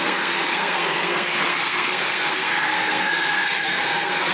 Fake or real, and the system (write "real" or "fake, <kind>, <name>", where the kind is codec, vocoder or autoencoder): fake, codec, SNAC